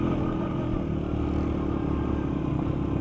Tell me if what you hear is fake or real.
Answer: real